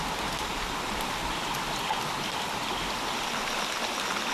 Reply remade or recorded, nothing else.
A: recorded